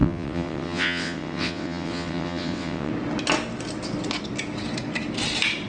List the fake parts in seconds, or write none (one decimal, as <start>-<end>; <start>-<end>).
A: 0.0-2.9